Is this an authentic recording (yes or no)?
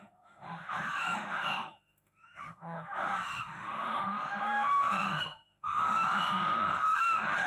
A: no